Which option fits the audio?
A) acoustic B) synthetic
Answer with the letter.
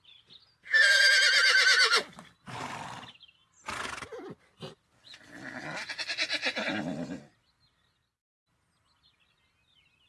A